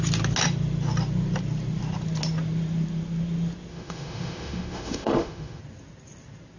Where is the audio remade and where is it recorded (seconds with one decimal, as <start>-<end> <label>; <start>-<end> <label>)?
0.0-3.7 recorded; 3.7-5.6 remade; 5.6-6.6 recorded

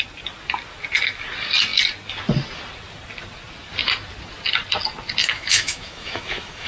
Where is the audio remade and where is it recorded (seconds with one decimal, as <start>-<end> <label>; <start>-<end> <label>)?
0.0-5.2 recorded; 5.2-6.7 remade